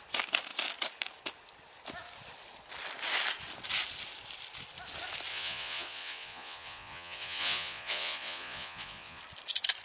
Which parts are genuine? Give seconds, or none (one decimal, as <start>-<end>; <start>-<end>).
0.0-5.3; 9.2-9.8